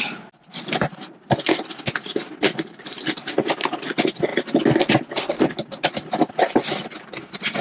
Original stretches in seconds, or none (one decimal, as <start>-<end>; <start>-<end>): 0.0-7.6

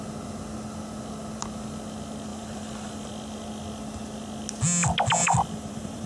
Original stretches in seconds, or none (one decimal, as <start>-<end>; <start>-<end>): 0.0-2.3; 3.1-5.2

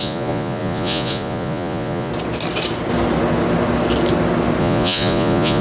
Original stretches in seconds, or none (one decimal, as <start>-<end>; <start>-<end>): 2.1-4.6

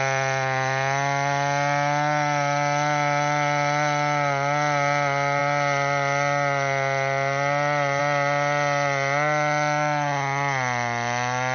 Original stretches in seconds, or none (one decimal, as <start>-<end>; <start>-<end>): 0.0-11.5

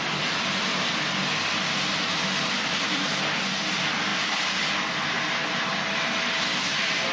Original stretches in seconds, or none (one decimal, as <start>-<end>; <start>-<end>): 0.0-7.1